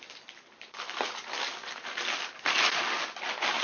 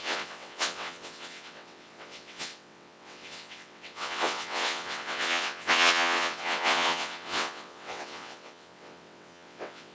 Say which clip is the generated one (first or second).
second